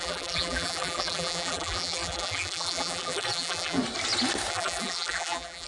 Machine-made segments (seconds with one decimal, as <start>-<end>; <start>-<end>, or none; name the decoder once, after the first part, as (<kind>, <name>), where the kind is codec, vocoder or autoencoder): 0.0-3.8 (vocoder, BigVGAN v2); 4.5-5.7